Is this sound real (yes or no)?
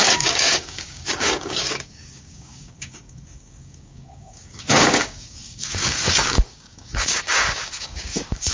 no